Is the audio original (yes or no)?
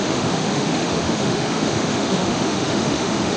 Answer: no